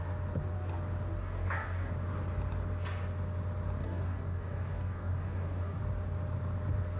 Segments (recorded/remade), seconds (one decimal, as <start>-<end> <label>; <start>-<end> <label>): 0.0-1.2 recorded; 1.2-1.9 remade; 1.9-3.8 recorded; 3.8-5.8 remade; 5.8-7.0 recorded